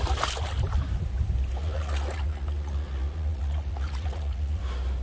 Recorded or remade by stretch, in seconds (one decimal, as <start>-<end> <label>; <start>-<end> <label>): 0.0-1.6 recorded; 1.6-4.6 remade; 4.6-5.0 recorded